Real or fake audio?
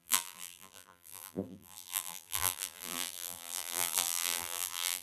fake